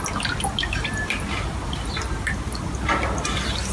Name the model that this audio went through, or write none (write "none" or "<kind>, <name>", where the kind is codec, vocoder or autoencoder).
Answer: none